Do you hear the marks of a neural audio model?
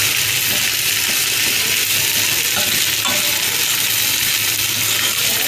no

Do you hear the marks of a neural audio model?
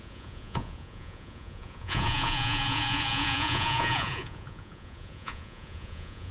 yes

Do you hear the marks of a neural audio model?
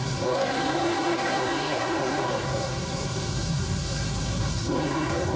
yes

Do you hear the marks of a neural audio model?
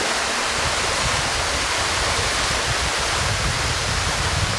no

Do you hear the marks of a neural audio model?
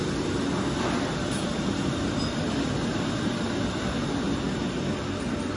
no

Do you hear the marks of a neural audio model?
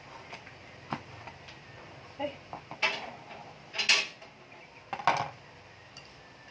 no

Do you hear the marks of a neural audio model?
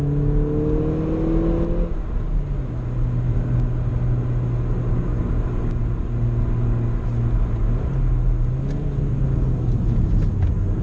no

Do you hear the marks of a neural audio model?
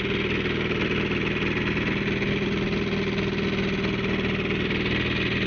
no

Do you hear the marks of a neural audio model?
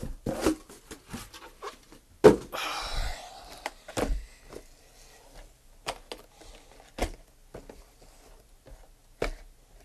no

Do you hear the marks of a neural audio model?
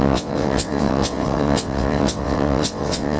yes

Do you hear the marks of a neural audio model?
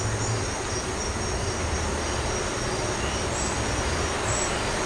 no